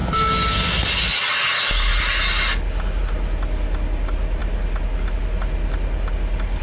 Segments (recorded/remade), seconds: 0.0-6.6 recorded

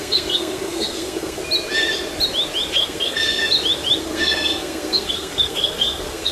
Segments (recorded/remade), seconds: 0.0-1.4 remade; 1.4-2.7 recorded; 2.7-3.4 remade; 3.4-4.0 recorded; 4.0-6.3 remade

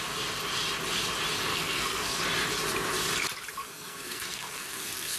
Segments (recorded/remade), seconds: 0.0-1.5 recorded; 1.5-2.2 remade; 2.2-3.6 recorded; 3.6-5.2 remade

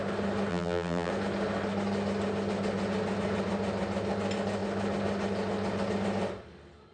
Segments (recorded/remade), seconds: 0.0-0.5 recorded; 0.5-1.1 remade; 1.1-6.9 recorded

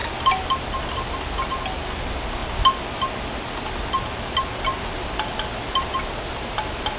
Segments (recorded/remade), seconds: 0.0-7.0 recorded

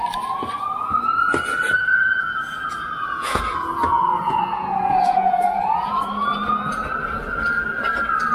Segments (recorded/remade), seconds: 0.0-1.8 recorded; 1.8-6.0 remade; 6.0-8.3 recorded

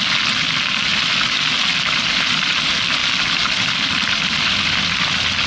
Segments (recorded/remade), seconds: 0.0-0.9 recorded; 0.9-2.6 remade; 2.6-3.0 recorded; 3.0-5.1 remade; 5.1-5.5 recorded